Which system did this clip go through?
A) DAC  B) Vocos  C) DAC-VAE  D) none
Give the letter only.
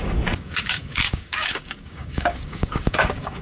A